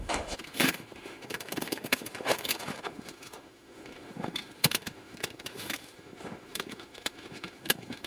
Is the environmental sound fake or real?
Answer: fake